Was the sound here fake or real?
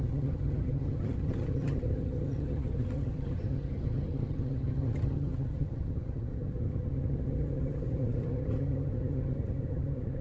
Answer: fake